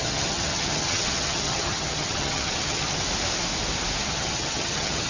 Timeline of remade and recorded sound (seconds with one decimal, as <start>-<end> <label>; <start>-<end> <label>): 0.0-3.0 remade; 3.0-4.0 recorded; 4.0-5.1 remade

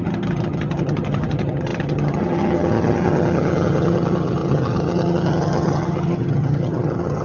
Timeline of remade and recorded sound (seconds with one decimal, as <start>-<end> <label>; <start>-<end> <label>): 0.0-7.2 remade

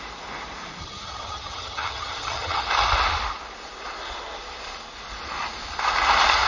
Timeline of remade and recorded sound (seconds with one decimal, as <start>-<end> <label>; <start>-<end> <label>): 0.0-0.8 recorded; 0.8-2.7 remade; 2.7-6.5 recorded

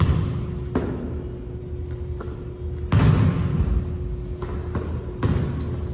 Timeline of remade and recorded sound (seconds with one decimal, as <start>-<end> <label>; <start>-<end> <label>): 0.0-5.9 recorded

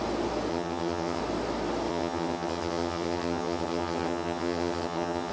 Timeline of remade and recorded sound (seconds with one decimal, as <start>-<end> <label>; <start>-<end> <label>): 0.0-0.5 recorded; 0.5-1.2 remade; 1.2-1.9 recorded; 1.9-5.3 remade

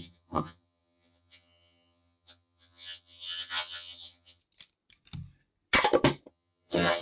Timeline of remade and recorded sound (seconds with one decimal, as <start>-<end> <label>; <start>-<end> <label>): 0.0-4.4 remade; 4.4-6.3 recorded; 6.3-7.0 remade

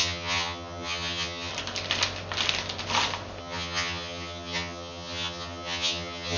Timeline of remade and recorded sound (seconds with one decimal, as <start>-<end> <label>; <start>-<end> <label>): 0.0-1.5 remade; 1.5-3.4 recorded; 3.4-6.4 remade